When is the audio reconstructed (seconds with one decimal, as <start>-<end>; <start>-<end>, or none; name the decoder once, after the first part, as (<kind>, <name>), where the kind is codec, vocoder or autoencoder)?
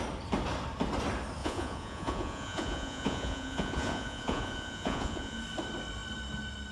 1.4-5.4 (vocoder, Vocos)